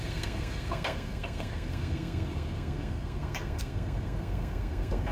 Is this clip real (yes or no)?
no